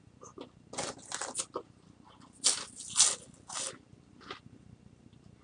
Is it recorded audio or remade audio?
recorded